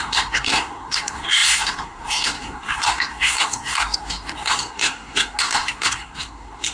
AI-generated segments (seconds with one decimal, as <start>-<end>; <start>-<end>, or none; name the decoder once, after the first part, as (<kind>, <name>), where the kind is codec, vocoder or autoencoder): 0.0-6.7 (codec, SNAC)